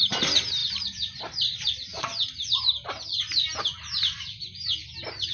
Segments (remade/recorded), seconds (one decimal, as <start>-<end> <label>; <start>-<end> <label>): 0.0-5.3 remade